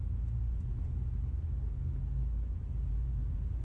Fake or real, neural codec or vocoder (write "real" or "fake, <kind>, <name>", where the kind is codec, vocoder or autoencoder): real